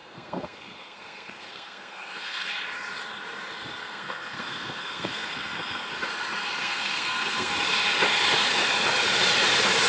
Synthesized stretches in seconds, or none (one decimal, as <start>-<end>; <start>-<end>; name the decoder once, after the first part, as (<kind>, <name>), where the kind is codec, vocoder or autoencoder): 0.0-2.5 (codec, SNAC); 3.8-5.9; 6.6-7.5